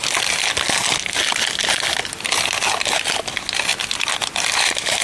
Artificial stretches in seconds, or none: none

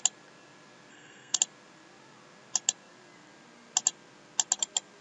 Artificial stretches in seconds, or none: 0.9-1.4 (codec, SNAC)